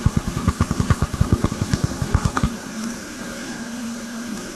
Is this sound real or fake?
fake